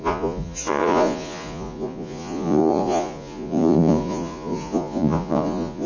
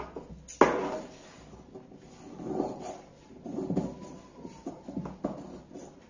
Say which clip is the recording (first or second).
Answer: second